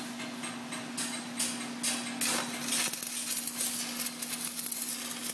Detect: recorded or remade recorded